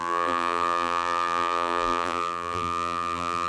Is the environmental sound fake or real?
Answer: fake